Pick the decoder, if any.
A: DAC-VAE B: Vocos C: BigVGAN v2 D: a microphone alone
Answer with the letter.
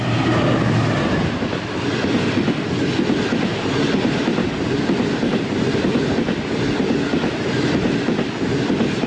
D